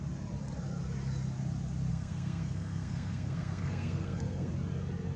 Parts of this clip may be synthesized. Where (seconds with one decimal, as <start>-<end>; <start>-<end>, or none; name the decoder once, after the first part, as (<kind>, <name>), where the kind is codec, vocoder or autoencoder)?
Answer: 1.9-4.5 (codec, SNAC)

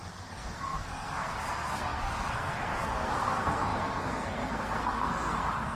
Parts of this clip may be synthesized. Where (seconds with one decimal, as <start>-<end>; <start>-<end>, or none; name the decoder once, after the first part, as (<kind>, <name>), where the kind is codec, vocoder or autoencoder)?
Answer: 0.0-5.8 (codec, SNAC)

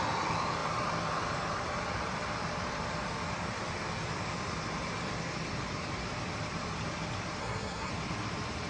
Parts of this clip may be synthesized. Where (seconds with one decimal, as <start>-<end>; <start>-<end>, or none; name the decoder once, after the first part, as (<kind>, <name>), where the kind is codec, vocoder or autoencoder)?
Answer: 7.4-7.9 (codec, SNAC)

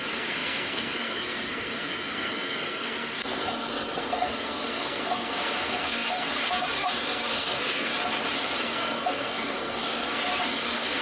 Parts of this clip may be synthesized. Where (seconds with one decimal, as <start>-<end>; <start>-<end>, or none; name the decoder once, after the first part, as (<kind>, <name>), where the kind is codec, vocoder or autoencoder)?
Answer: 0.0-7.9 (codec, SNAC); 8.6-11.0

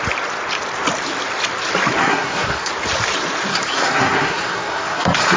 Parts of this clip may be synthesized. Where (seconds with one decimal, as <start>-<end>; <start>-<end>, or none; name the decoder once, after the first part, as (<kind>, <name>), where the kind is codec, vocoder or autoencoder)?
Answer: 2.0-2.7 (codec, SNAC); 3.5-5.4

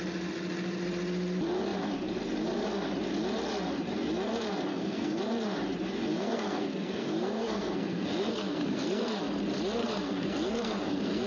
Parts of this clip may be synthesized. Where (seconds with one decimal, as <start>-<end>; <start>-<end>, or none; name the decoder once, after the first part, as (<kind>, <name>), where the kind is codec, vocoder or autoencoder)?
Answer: 4.7-5.2 (codec, SNAC); 6.1-9.2; 9.8-11.3